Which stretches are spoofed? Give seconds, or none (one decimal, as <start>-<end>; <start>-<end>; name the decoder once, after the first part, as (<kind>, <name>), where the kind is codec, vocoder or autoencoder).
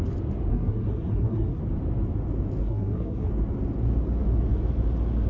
0.5-1.6 (codec, SNAC); 2.6-3.3